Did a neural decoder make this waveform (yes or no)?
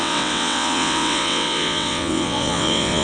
yes